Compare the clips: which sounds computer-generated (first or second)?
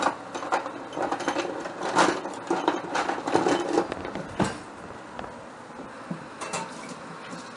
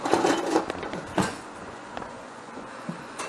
second